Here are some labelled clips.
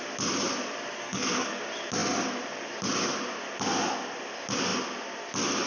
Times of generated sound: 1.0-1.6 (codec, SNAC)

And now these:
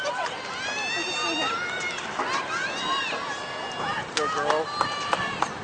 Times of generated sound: none

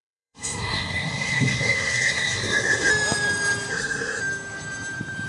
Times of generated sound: 0.0-2.9 (codec, SNAC); 3.7-4.2